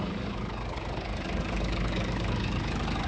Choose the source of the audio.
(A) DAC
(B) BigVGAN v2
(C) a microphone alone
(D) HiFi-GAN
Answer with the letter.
A